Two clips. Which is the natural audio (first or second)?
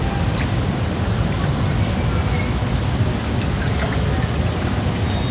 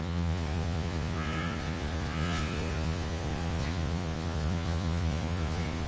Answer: first